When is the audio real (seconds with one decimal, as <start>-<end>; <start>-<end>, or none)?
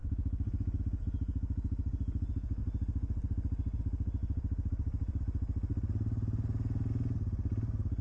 0.8-4.2; 5.2-8.0